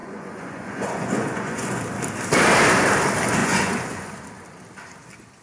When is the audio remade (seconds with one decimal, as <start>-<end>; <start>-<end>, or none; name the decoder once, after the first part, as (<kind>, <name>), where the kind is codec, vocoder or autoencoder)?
0.0-1.8 (vocoder, Vocos); 3.4-4.1